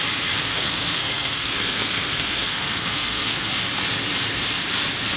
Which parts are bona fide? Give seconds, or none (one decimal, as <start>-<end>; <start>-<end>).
0.0-0.4; 3.5-5.2